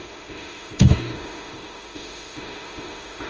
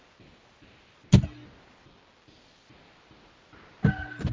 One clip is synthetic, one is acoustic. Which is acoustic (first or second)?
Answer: second